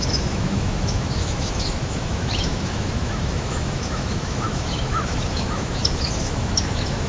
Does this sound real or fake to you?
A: fake